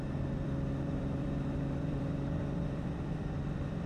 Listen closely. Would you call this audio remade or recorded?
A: remade